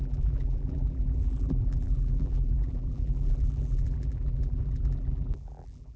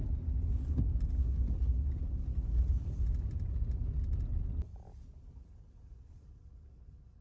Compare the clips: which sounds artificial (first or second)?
first